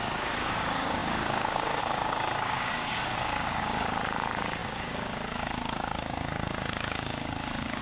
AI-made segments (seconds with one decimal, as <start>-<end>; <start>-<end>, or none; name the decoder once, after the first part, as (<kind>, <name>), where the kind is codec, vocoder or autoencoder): 0.0-7.8 (codec, DAC)